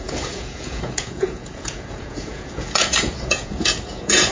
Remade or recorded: remade